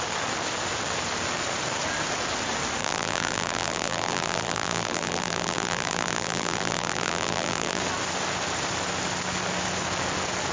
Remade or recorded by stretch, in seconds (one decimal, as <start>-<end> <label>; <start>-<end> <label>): 0.0-2.8 recorded; 2.8-7.8 remade; 7.8-10.5 recorded